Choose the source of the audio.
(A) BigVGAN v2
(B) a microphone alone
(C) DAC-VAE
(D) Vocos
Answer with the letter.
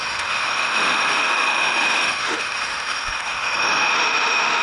C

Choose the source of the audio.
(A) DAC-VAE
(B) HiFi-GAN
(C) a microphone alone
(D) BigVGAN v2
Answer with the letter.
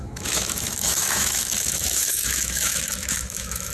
A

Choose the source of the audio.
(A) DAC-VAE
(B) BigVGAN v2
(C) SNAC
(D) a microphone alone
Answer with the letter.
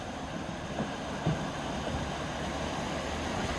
D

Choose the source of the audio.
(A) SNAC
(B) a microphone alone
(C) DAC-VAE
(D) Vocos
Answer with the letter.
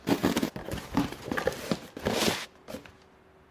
B